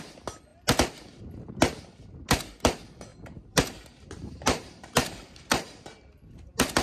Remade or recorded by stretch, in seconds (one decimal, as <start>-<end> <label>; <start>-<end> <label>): 0.0-3.1 recorded; 3.1-5.8 remade; 5.8-6.8 recorded